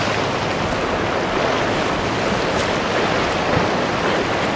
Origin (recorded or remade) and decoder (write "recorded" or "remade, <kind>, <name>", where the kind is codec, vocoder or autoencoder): recorded